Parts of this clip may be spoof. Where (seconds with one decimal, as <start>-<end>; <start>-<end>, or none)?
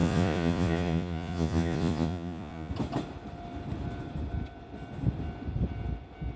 0.0-2.7